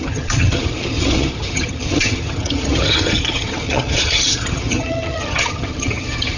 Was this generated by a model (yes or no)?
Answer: yes